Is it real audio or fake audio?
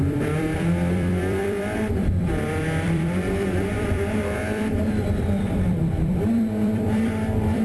fake